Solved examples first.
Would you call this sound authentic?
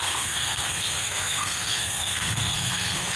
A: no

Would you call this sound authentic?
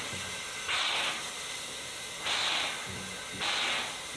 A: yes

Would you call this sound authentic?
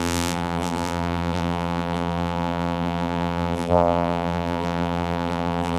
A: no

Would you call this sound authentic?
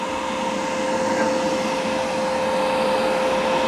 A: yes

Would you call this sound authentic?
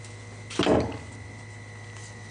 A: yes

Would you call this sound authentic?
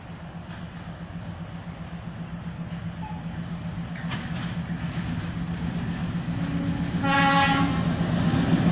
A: yes